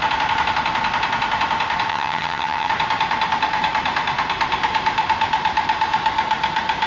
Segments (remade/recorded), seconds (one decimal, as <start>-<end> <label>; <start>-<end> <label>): 0.0-1.9 recorded; 1.9-2.7 remade; 2.7-6.9 recorded